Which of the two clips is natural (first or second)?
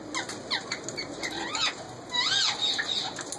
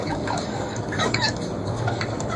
first